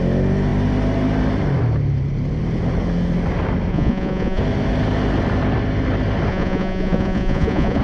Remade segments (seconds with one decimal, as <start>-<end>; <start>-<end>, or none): 3.7-4.4; 6.3-7.8